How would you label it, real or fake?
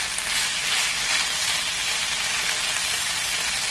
real